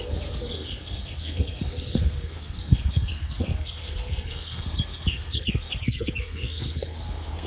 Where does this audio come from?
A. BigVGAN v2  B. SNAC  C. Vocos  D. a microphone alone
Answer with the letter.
B